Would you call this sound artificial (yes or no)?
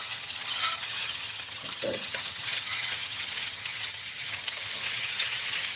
yes